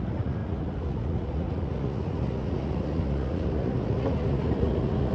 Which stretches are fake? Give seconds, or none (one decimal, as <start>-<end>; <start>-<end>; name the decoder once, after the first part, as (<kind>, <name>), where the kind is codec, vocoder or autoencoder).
0.0-5.1 (vocoder, Vocos)